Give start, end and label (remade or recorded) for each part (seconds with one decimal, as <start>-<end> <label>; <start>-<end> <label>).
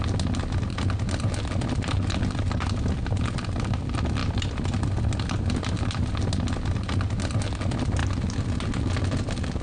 0.0-9.6 recorded